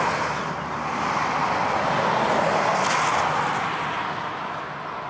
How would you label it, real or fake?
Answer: real